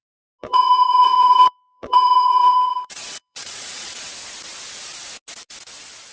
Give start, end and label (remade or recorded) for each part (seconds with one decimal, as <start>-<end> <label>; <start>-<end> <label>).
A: 0.0-0.4 recorded; 0.4-4.1 remade; 4.1-6.1 recorded